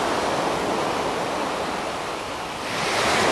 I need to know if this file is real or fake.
real